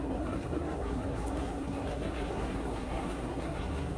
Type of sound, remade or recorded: remade